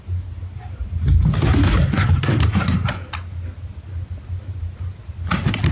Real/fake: real